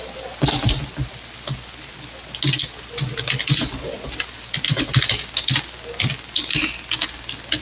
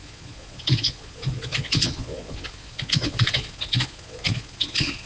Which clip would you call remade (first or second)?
second